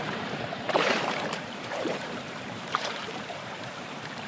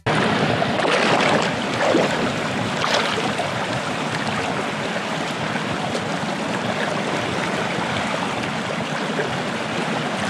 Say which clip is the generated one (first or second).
first